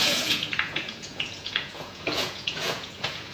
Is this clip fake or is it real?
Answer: fake